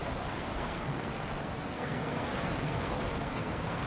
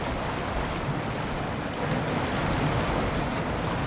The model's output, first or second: first